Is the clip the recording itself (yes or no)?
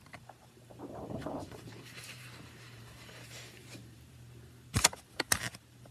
no